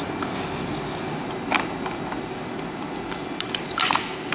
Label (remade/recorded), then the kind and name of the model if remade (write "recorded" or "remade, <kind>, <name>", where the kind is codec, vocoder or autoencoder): recorded